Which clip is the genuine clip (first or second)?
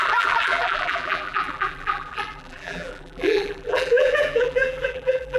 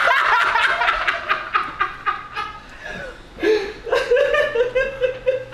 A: second